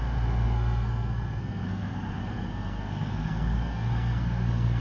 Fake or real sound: fake